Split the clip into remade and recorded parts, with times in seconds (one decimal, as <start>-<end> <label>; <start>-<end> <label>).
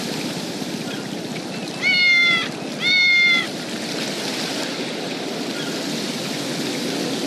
0.0-7.3 recorded